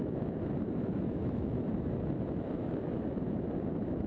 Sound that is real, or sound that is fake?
fake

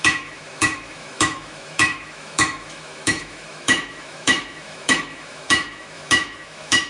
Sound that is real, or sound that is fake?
fake